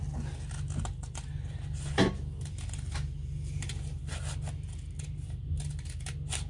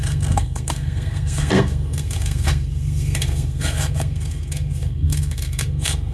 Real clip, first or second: first